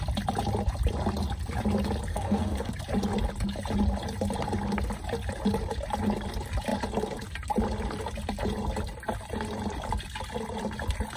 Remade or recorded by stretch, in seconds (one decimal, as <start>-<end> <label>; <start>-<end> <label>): 0.0-2.1 recorded; 2.1-2.7 remade; 2.7-11.2 recorded

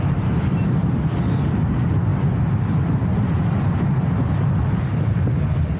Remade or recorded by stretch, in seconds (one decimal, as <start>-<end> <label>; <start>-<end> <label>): 0.0-5.8 recorded